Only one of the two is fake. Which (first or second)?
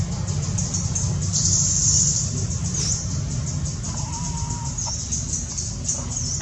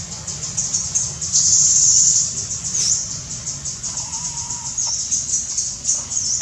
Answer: second